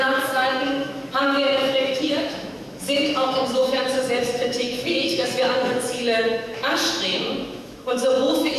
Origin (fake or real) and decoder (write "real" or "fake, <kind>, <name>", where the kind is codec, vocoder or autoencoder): fake, autoencoder, DAC-VAE